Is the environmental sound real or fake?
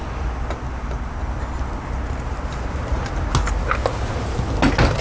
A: real